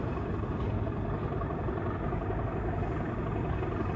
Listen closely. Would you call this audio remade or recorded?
recorded